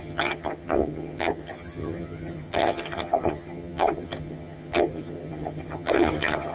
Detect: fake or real fake